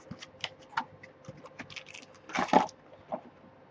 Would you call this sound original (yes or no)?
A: yes